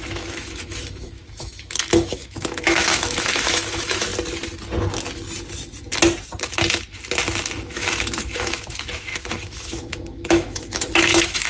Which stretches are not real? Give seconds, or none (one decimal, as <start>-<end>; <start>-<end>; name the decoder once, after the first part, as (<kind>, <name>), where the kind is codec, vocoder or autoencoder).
0.0-4.1 (autoencoder, DAC-VAE); 7.6-11.5